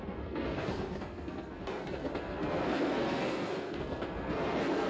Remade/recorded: remade